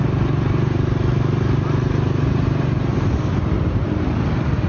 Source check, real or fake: real